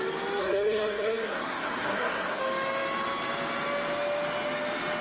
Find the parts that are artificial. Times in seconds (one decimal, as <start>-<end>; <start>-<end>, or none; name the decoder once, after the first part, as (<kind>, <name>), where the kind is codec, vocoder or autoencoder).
0.4-2.4 (codec, SNAC)